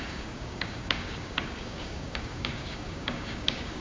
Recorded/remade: remade